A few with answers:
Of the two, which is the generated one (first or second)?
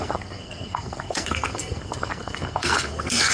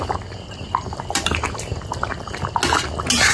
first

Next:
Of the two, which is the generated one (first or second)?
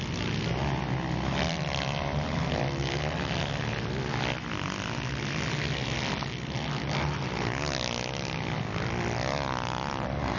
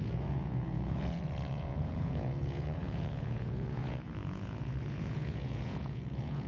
second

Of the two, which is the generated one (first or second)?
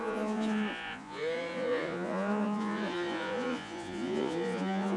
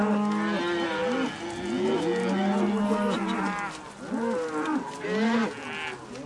first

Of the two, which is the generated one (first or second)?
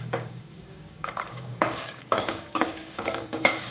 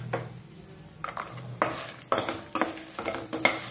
first